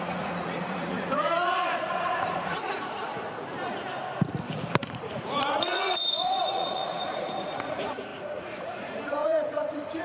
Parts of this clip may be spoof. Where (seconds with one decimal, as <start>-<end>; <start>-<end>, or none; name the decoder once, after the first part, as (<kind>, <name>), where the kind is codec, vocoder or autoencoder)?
0.0-3.1 (vocoder, Vocos); 4.8-10.0